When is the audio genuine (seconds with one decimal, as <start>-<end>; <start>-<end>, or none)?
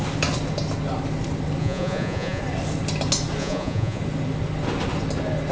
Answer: 0.0-1.6; 2.4-3.4; 4.0-5.5